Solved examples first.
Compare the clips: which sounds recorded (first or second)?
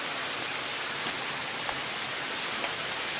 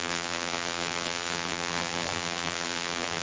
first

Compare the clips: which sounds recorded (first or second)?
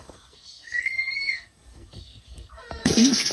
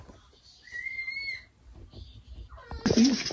second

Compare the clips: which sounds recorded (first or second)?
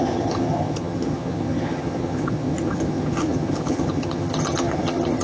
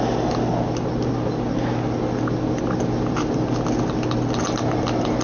second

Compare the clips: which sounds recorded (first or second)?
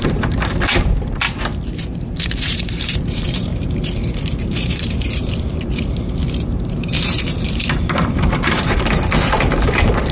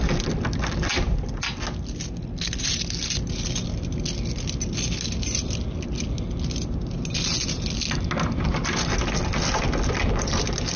second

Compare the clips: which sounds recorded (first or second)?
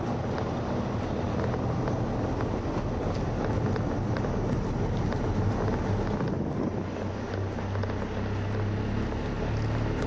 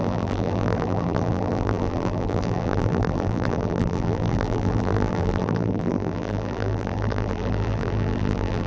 first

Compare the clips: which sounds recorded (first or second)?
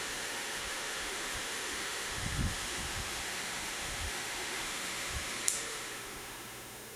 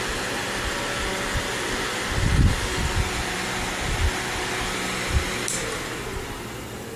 second